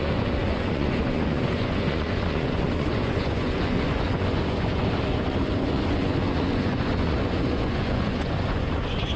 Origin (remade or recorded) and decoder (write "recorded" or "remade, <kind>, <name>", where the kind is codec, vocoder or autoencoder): remade, vocoder, Vocos